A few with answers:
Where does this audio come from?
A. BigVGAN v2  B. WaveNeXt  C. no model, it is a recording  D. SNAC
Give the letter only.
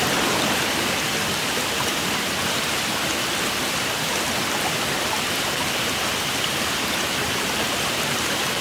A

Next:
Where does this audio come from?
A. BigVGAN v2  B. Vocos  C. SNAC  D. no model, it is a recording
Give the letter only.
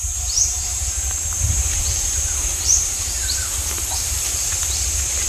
A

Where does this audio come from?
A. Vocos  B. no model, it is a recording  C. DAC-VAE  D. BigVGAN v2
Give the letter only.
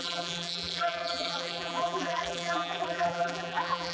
D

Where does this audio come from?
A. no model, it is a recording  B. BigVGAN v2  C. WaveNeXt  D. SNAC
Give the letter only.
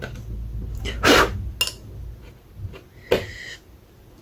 A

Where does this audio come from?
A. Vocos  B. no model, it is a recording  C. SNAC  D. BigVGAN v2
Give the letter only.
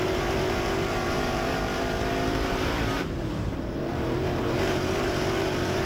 D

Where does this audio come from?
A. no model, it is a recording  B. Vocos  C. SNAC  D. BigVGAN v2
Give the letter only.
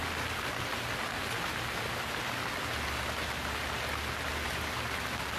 A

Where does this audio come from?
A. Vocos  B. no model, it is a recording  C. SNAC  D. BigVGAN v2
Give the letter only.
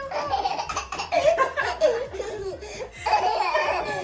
B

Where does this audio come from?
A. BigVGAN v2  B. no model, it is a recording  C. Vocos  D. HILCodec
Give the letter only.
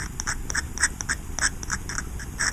B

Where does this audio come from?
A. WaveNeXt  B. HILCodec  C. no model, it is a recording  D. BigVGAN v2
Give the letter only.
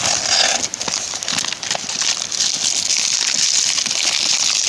C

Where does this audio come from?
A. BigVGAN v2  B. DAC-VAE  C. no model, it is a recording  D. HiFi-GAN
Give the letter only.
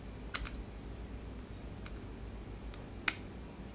C